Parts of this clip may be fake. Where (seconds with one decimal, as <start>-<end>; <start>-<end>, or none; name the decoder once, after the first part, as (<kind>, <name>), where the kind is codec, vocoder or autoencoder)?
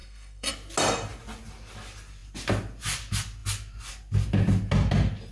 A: 0.0-0.5 (codec, SNAC)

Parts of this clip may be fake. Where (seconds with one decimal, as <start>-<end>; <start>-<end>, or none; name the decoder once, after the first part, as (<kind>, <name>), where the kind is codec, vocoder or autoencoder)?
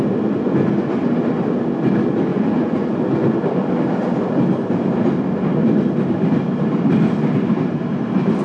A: 2.3-3.0 (vocoder, Vocos)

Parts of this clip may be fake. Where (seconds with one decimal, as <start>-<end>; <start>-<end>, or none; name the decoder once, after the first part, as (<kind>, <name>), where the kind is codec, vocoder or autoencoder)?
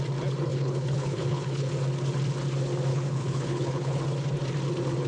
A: 0.5-1.7 (codec, HILCodec); 2.9-4.0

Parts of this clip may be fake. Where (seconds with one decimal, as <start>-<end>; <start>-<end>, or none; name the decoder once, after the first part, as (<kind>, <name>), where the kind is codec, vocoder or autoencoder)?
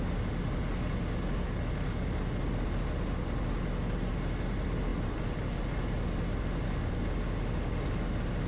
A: none